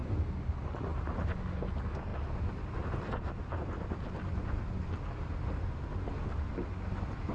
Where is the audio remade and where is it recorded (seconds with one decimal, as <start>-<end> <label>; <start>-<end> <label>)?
0.0-7.3 recorded